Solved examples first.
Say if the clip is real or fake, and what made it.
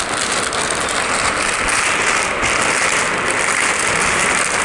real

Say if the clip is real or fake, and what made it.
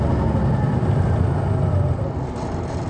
real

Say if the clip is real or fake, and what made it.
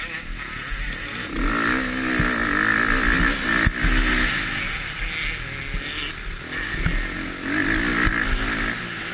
real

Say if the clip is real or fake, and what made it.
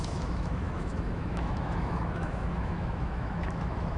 fake, autoencoder, DAC-VAE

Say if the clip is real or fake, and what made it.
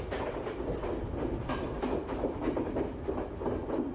real